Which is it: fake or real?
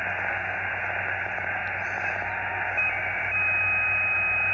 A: real